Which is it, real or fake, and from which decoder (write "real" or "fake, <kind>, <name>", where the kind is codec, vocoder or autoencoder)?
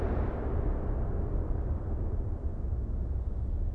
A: real